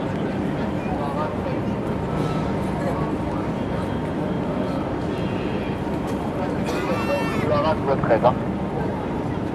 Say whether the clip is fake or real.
real